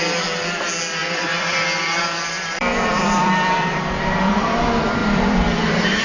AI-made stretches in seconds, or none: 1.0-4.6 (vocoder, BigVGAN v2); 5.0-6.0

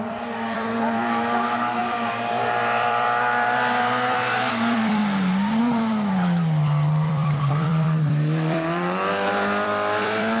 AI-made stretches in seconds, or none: 0.0-5.0 (vocoder, BigVGAN v2); 5.6-10.4

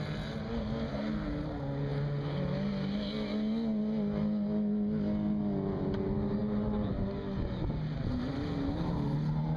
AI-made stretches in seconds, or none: none

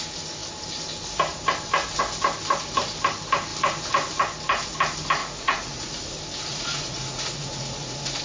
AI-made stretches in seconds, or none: 5.2-5.9 (vocoder, Vocos); 6.5-8.2